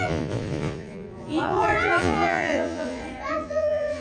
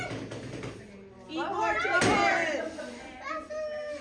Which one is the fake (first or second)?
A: first